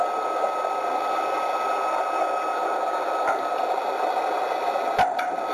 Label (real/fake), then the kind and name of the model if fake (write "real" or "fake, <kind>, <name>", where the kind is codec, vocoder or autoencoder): real